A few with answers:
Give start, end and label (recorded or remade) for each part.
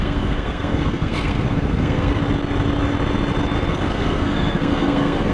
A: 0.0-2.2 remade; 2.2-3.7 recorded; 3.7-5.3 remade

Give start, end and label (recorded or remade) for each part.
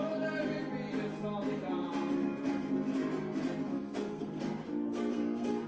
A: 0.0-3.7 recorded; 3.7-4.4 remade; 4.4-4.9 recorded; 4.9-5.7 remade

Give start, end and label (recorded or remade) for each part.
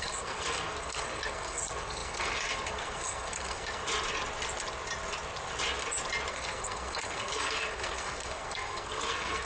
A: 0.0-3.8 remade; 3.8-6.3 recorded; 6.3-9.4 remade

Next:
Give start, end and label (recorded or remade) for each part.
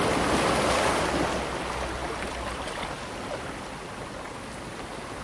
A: 0.0-5.2 recorded